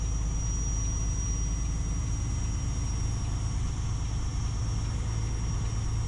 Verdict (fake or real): real